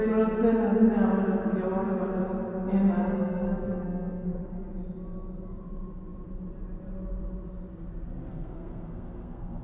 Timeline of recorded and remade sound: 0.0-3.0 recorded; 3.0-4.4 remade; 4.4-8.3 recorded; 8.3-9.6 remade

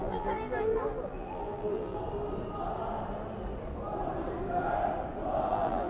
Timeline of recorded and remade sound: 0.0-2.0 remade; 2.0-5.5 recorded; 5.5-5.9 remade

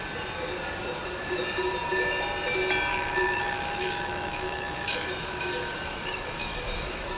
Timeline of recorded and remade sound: 0.0-2.9 recorded; 2.9-7.2 remade